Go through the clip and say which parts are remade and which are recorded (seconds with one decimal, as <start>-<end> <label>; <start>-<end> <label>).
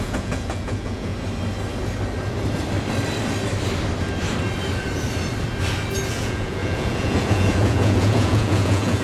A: 0.0-1.1 remade; 1.1-6.1 recorded; 6.1-9.0 remade